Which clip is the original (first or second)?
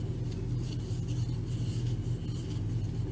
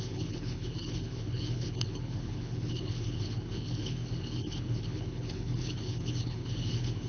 first